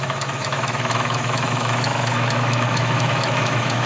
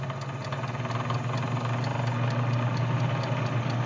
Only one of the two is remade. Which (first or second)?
first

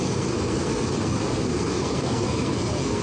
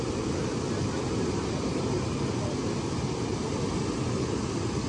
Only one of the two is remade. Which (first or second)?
first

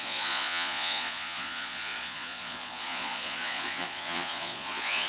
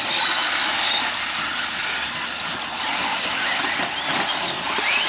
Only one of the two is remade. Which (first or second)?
first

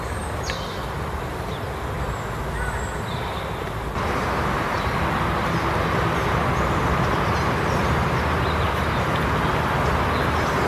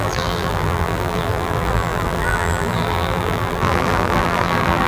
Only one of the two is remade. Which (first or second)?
second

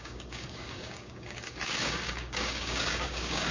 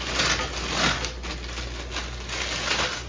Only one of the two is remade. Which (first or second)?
first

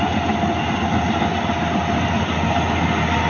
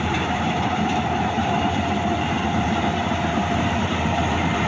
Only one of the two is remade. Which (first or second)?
second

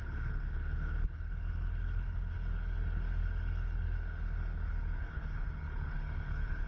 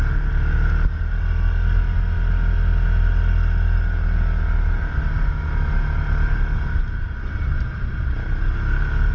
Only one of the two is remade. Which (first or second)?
first